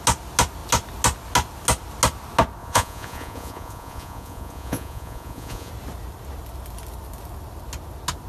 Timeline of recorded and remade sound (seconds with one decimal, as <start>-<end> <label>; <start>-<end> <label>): 0.0-2.6 recorded; 2.6-5.7 remade; 5.7-8.3 recorded